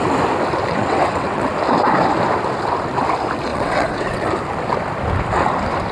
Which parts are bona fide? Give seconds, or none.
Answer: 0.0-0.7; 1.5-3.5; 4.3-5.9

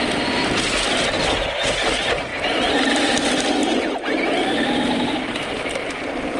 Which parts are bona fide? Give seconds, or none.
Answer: 0.0-2.3; 3.0-3.6; 5.0-6.4

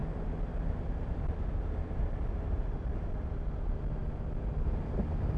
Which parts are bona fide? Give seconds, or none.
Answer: 0.0-5.4

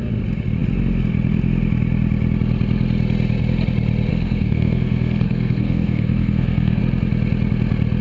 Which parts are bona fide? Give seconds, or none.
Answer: 0.0-4.1; 6.8-8.0